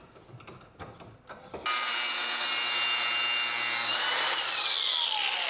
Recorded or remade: recorded